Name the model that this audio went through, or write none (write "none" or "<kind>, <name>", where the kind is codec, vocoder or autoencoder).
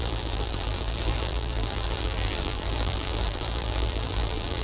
vocoder, BigVGAN v2